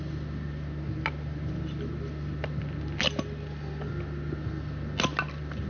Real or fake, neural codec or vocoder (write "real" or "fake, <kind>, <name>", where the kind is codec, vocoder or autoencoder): real